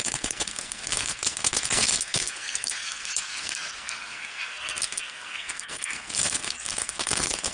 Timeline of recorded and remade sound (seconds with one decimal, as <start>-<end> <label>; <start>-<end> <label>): 0.0-7.5 remade